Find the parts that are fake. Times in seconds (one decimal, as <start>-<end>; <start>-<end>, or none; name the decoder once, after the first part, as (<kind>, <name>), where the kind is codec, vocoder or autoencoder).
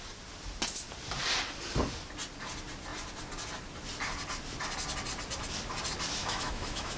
6.2-7.0 (autoencoder, DAC-VAE)